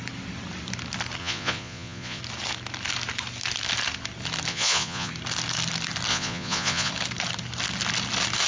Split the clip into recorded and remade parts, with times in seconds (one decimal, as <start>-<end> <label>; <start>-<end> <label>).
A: 0.0-1.2 recorded; 1.2-2.2 remade; 2.2-4.5 recorded; 4.5-5.1 remade; 5.1-6.1 recorded; 6.1-6.9 remade; 6.9-8.5 recorded

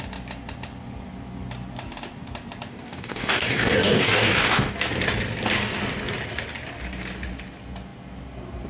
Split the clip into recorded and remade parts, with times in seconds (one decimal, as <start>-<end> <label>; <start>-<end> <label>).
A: 0.0-2.7 recorded; 2.7-4.7 remade; 4.7-8.7 recorded